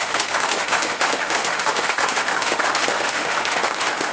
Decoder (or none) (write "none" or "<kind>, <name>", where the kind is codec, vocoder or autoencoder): autoencoder, DAC-VAE